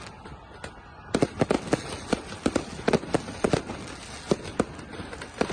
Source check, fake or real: real